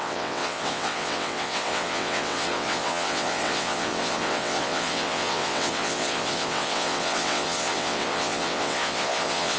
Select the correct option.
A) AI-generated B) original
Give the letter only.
A